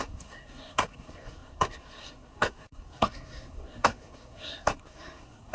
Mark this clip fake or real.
fake